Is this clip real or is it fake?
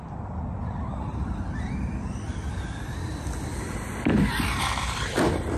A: real